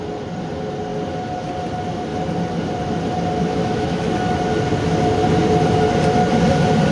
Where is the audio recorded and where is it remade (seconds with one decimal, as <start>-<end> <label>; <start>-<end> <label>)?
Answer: 0.0-3.4 recorded; 3.4-4.4 remade; 4.4-6.9 recorded